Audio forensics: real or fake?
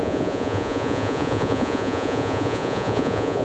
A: fake